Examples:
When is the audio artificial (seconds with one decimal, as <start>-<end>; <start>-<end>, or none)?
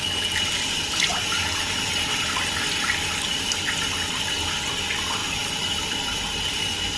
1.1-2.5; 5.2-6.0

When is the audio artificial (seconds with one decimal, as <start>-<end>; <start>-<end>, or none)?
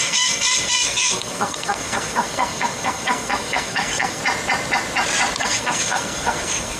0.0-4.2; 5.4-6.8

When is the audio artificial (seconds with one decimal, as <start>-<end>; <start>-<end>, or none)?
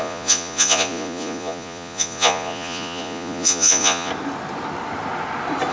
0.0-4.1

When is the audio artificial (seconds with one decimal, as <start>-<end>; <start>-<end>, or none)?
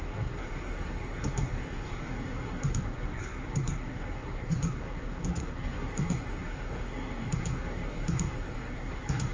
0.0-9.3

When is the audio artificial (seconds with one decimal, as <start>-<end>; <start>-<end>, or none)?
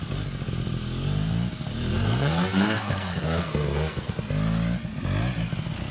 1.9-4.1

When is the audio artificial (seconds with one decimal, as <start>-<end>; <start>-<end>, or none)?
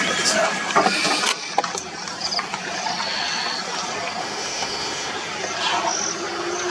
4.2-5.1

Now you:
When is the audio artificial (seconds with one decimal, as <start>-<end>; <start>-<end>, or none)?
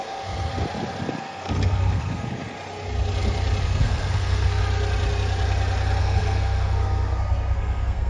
0.0-0.5; 1.2-2.4; 3.6-4.6; 6.0-8.1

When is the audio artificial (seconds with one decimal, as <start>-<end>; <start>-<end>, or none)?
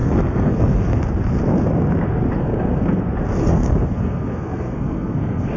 0.0-1.0; 2.4-3.0; 3.4-5.6